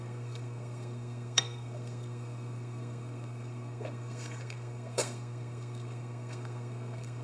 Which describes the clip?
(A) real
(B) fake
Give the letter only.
B